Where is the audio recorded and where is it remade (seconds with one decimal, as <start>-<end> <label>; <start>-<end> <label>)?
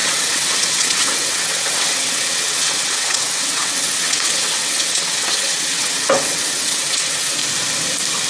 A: 0.0-7.4 remade; 7.4-8.3 recorded